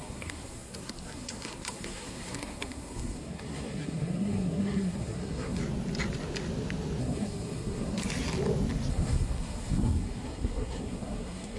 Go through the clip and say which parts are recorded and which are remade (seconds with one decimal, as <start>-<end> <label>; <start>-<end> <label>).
0.0-5.6 remade; 5.6-7.0 recorded; 7.0-8.0 remade; 8.0-8.9 recorded; 8.9-11.6 remade